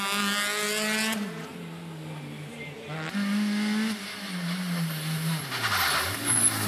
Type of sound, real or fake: real